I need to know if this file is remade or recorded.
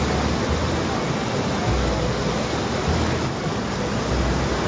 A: recorded